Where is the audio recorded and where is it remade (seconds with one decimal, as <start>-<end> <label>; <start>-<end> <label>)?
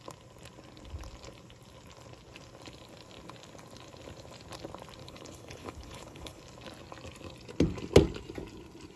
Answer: 0.0-5.0 recorded; 5.0-6.4 remade; 6.4-9.0 recorded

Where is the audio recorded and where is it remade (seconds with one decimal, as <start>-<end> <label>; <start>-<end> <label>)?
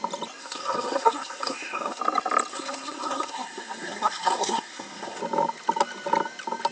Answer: 0.0-0.4 recorded; 0.4-2.0 remade; 2.0-2.5 recorded; 2.5-5.2 remade; 5.2-6.7 recorded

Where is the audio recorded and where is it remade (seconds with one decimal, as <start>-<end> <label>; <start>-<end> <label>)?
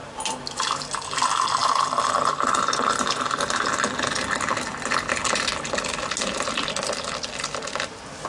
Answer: 0.0-0.9 remade; 0.9-8.3 recorded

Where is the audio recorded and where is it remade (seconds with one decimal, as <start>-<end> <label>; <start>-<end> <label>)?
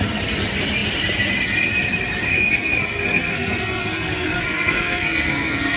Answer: 0.0-2.3 recorded; 2.3-5.8 remade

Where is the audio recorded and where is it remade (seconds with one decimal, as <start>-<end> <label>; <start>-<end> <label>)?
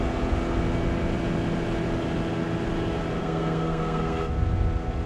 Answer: 0.0-3.2 recorded; 3.2-4.3 remade; 4.3-5.1 recorded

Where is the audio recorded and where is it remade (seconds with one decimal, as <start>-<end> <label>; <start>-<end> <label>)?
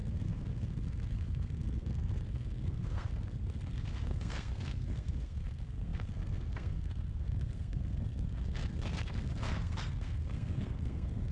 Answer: 0.0-11.3 remade